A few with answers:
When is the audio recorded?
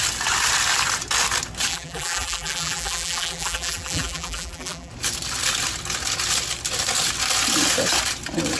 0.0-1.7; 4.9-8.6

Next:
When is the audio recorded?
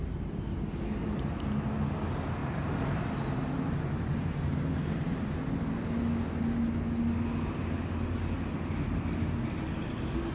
0.0-2.4; 5.4-10.3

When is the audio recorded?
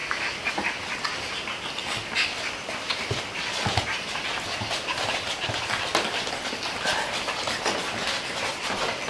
0.0-9.1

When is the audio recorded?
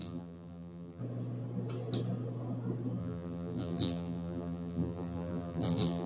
1.0-3.0